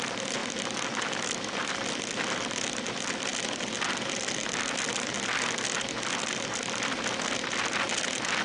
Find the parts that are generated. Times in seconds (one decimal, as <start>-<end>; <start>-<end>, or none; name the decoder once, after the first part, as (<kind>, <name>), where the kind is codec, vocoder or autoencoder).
none